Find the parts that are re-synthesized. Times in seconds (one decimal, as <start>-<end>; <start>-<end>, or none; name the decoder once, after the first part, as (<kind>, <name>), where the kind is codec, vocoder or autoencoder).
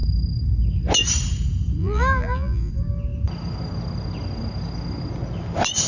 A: 1.8-2.7 (vocoder, BigVGAN v2)